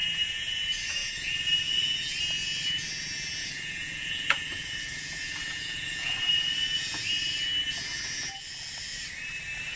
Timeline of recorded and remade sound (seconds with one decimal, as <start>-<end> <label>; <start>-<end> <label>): 0.0-0.6 remade; 0.6-1.0 recorded; 1.0-2.0 remade; 2.0-3.4 recorded; 3.4-7.1 remade; 7.1-9.8 recorded